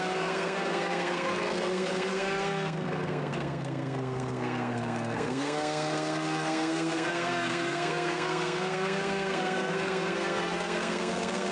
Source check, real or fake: fake